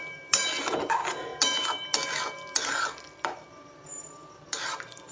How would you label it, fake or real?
fake